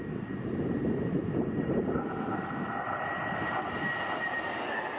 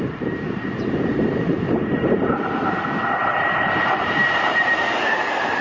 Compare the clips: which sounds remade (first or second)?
second